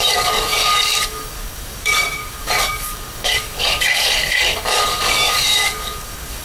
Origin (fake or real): fake